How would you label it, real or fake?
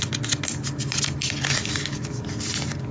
real